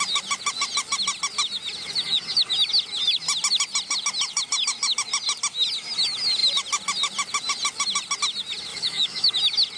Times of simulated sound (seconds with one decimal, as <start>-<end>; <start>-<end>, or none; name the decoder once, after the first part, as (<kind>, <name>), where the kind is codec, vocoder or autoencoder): 8.7-9.3 (autoencoder, DAC-VAE)